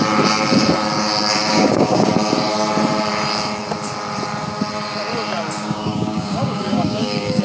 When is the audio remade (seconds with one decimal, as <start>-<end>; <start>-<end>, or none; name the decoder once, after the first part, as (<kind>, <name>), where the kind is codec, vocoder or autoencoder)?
1.5-2.1 (codec, DAC); 5.6-7.4